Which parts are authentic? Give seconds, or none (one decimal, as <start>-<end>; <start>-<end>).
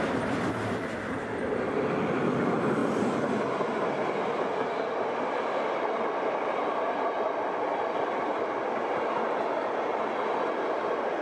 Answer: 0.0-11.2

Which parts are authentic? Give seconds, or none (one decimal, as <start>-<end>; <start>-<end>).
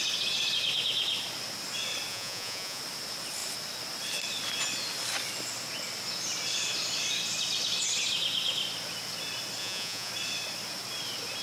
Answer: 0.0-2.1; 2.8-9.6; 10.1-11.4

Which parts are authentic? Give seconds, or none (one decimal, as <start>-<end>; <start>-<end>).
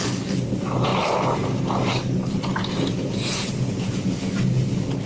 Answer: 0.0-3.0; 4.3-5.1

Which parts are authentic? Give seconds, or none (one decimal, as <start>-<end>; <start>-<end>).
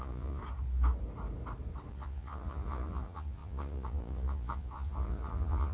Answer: 0.4-1.9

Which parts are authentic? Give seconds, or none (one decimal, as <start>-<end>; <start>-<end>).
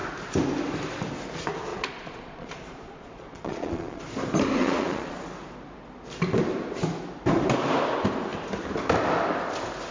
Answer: 0.0-1.7; 4.0-4.6; 5.2-9.9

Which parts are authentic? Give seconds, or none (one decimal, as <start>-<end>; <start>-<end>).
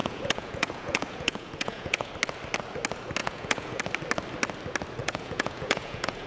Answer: 2.1-3.2; 3.8-5.0